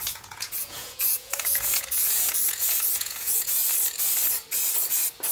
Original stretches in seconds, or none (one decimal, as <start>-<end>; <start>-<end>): 3.6-5.3